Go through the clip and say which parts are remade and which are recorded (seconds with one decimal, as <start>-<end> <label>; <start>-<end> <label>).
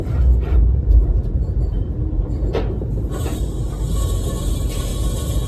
0.0-4.9 remade; 4.9-5.5 recorded